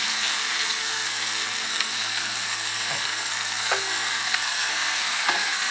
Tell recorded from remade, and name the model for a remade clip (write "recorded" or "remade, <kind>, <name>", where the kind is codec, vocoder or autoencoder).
remade, codec, SNAC